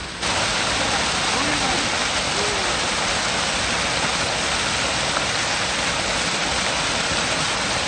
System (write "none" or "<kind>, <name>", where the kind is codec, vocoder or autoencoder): none